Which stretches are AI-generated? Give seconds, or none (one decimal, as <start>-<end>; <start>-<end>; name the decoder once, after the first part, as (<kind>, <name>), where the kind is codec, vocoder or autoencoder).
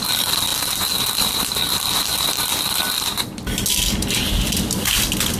none